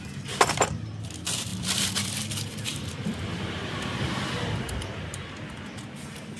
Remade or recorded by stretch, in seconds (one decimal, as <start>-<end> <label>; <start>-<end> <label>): 0.0-1.5 recorded; 1.5-2.2 remade; 2.2-2.7 recorded; 2.7-3.2 remade; 3.2-6.4 recorded